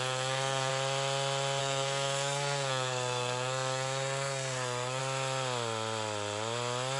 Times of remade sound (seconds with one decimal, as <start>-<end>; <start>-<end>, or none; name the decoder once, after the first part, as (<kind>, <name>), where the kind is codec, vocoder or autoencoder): 0.0-0.7 (codec, SNAC); 1.6-5.0